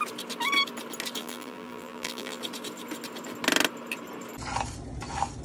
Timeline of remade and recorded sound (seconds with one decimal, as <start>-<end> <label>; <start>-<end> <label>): 0.0-1.2 recorded; 1.2-2.4 remade; 2.4-5.4 recorded